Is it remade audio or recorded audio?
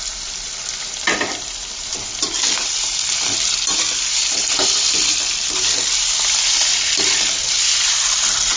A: remade